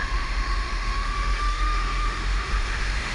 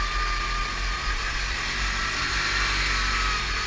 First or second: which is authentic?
second